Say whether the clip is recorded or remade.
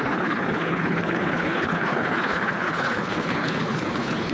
remade